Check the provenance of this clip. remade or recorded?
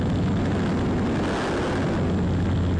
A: recorded